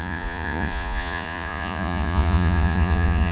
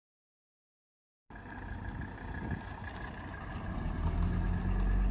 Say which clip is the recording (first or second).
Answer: second